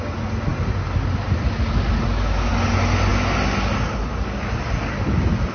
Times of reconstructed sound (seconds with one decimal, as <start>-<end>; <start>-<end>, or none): none